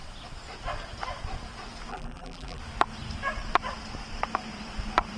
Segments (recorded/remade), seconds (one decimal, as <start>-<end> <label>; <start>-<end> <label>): 0.0-1.9 recorded; 1.9-2.6 remade; 2.6-5.2 recorded